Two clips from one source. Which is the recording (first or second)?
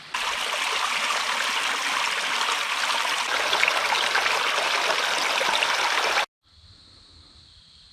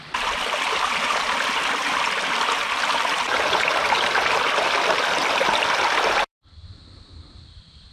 first